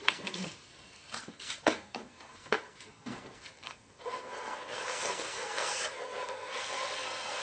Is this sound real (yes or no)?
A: no